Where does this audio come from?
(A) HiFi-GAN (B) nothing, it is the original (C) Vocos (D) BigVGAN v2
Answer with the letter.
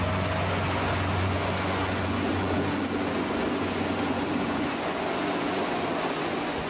C